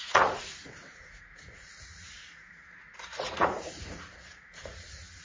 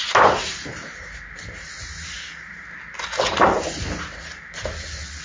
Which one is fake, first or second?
first